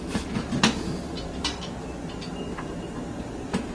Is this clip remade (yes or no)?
no